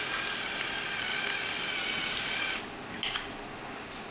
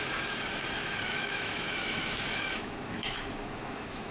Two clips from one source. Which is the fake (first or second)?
second